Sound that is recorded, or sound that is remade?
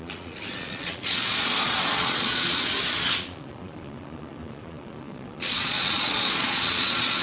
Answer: remade